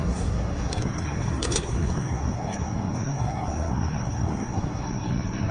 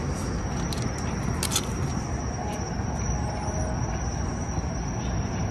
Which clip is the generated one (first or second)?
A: first